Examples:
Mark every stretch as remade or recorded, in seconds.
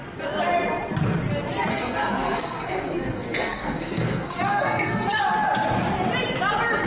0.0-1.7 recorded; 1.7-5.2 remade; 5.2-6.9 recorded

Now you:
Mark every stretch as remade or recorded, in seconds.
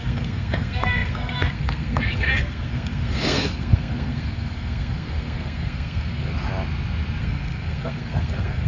0.0-6.3 remade; 6.3-7.2 recorded; 7.2-8.7 remade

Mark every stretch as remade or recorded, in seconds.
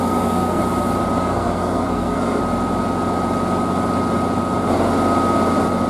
0.0-0.6 remade; 0.6-1.2 recorded; 1.2-2.4 remade; 2.4-5.9 recorded